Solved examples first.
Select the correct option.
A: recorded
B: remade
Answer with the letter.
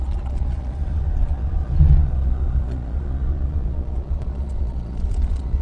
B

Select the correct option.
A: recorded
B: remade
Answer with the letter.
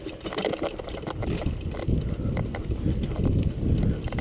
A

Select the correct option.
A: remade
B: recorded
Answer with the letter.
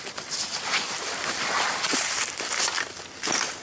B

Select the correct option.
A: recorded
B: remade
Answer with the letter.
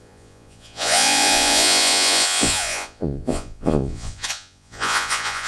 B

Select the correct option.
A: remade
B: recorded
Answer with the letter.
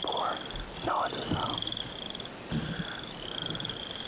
B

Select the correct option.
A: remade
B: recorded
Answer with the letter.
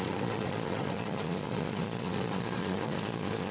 A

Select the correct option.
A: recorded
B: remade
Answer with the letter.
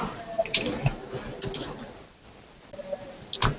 A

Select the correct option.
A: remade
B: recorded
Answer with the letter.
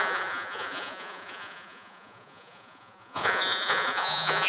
A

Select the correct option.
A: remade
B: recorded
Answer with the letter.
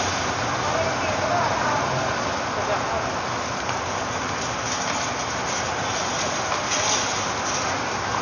B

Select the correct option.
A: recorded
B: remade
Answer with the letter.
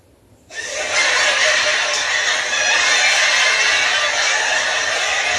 A